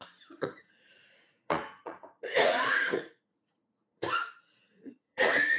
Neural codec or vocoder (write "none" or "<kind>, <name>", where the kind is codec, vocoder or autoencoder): vocoder, Vocos